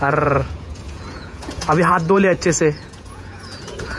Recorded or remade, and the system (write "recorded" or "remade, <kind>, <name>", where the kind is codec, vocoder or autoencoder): remade, vocoder, Vocos